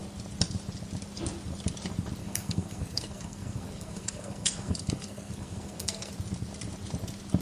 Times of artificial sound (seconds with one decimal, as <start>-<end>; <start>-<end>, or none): 2.2-6.1